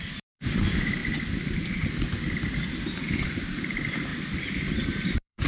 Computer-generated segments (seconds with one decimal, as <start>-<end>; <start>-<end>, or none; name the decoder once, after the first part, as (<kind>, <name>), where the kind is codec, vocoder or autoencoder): 0.0-1.0 (vocoder, BigVGAN v2); 2.1-4.1; 4.7-5.5